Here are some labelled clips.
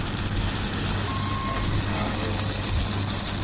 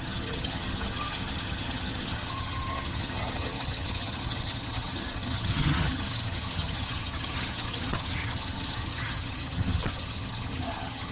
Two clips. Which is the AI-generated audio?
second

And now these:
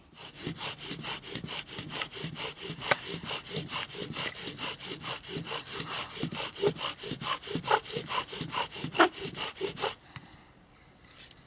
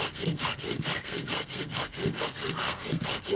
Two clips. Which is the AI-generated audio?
second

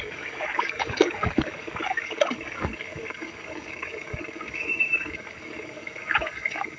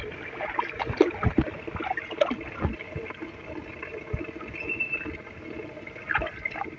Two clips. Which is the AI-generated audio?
first